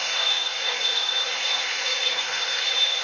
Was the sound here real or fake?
fake